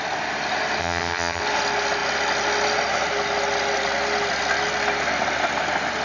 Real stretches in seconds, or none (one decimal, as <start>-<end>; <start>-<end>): 0.0-0.8; 1.4-6.0